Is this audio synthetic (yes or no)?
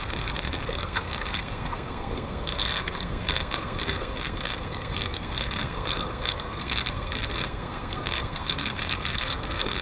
yes